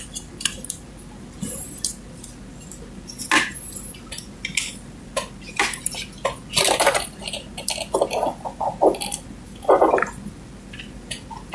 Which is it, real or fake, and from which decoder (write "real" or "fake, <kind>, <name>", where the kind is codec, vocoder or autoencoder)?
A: real